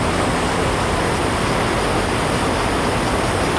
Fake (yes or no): no